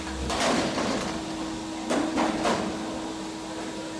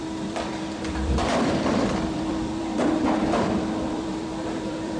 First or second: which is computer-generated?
second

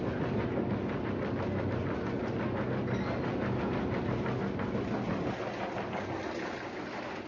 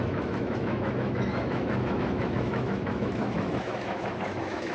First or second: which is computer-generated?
second